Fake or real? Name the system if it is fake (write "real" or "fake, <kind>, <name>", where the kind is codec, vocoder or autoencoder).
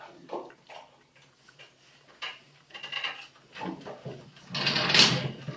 real